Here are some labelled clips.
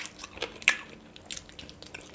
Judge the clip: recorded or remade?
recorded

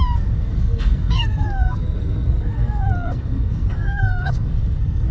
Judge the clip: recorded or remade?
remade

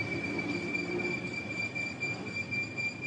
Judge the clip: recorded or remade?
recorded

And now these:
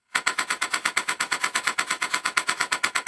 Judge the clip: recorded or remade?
remade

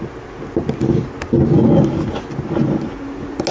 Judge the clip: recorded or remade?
recorded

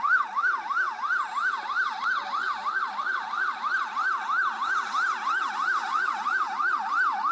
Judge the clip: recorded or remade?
recorded